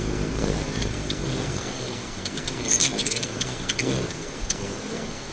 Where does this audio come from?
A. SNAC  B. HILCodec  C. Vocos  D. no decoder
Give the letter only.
A